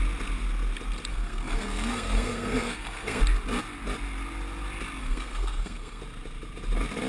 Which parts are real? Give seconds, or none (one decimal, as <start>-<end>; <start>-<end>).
0.0-1.1; 3.2-5.0; 6.0-7.1